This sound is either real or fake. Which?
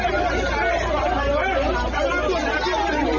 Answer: real